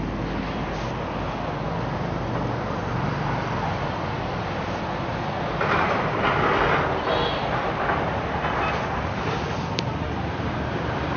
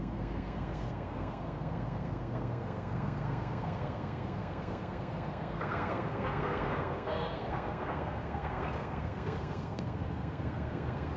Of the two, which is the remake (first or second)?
second